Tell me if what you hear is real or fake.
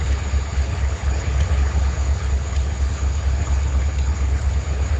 fake